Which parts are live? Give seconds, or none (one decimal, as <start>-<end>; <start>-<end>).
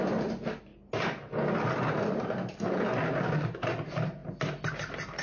0.0-5.2